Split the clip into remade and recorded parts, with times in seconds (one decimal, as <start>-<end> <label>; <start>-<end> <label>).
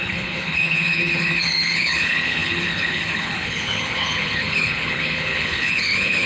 0.0-6.3 remade